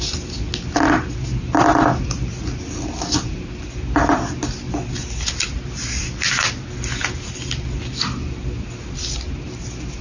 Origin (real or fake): real